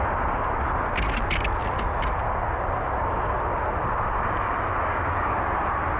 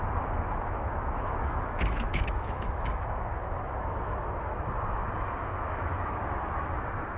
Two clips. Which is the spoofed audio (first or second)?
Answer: second